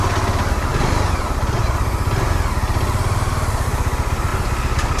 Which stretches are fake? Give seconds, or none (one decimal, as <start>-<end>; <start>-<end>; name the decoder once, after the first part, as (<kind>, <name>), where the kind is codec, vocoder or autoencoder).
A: none